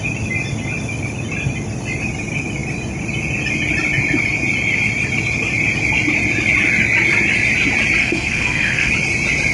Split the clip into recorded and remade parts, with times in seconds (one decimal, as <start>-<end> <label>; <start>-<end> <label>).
0.0-8.0 recorded; 8.0-8.9 remade; 8.9-9.5 recorded